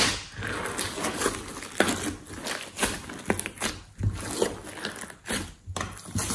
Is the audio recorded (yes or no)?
yes